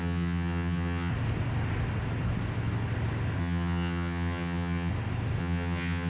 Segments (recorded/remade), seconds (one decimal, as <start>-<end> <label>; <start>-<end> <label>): 0.0-1.1 remade; 1.1-3.4 recorded; 3.4-4.9 remade; 4.9-5.4 recorded; 5.4-6.1 remade